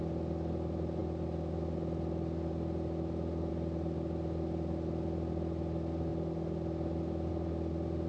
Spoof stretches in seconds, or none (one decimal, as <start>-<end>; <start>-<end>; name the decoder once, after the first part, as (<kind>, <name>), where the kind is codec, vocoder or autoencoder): none